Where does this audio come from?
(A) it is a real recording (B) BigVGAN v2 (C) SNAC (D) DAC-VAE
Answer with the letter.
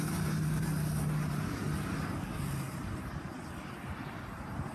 A